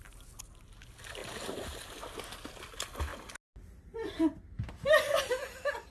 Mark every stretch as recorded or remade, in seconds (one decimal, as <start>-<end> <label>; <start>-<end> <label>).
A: 0.0-5.9 recorded